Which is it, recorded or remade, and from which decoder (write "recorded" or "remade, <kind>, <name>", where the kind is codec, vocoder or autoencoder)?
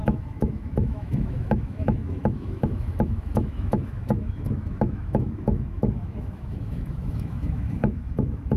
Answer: remade, autoencoder, DAC-VAE